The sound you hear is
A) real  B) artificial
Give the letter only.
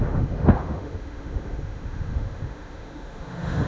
B